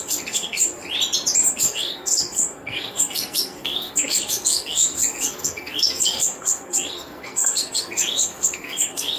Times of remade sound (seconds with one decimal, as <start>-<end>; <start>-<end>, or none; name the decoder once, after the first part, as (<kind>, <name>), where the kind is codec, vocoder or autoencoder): 0.0-0.8 (codec, SNAC); 1.5-9.2